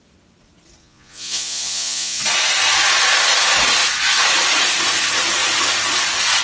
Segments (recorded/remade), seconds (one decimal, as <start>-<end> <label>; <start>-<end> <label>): 0.0-0.8 recorded; 0.8-2.2 remade; 2.2-6.4 recorded